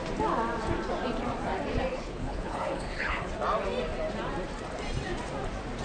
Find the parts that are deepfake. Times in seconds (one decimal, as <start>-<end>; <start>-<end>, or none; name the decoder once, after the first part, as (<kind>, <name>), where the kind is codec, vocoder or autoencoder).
1.9-3.3 (codec, HILCodec)